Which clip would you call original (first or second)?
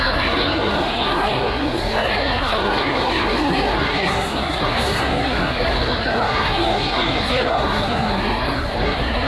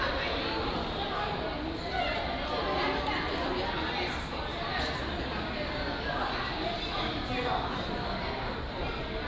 second